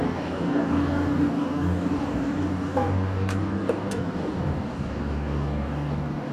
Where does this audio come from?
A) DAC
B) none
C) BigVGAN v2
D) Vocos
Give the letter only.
A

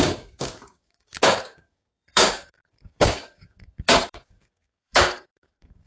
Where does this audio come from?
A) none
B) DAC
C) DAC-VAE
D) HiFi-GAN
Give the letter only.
B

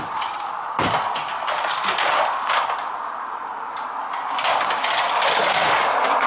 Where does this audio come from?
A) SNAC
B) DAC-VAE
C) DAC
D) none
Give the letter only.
D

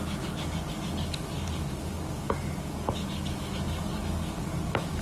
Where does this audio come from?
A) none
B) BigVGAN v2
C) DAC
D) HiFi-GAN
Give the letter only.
C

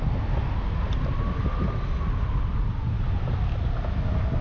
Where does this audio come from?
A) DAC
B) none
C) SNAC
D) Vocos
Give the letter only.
B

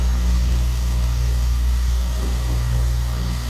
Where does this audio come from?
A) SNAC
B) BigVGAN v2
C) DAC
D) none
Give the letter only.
C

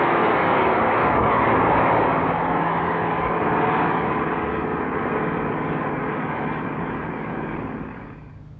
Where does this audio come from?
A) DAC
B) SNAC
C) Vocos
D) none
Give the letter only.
A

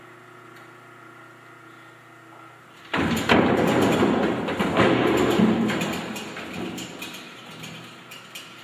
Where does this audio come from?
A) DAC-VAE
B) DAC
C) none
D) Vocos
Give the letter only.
C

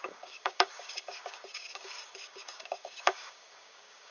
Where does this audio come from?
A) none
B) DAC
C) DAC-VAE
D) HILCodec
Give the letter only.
B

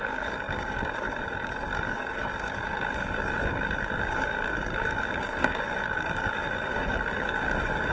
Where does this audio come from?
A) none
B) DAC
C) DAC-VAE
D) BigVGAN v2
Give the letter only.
B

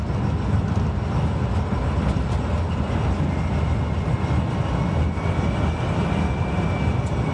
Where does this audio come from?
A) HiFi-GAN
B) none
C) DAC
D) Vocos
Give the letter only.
B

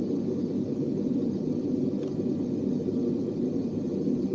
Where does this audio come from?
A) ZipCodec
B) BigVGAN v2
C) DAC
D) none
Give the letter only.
D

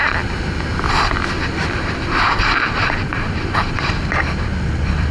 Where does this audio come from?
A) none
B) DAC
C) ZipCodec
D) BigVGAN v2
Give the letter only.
A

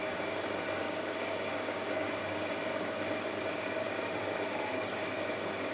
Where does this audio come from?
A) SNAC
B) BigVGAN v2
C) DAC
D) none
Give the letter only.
C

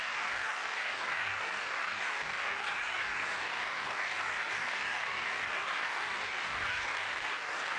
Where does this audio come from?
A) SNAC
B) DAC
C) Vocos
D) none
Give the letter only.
B